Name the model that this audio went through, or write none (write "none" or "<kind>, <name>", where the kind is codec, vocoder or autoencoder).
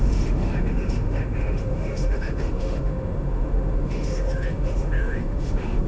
autoencoder, DAC-VAE